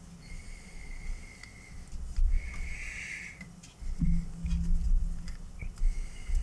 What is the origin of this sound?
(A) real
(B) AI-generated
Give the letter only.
A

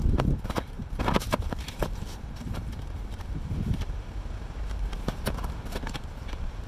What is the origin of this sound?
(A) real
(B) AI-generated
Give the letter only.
B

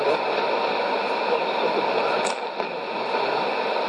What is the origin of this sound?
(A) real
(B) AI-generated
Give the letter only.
A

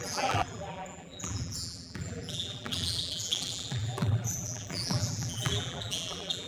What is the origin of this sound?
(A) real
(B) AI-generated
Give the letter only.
B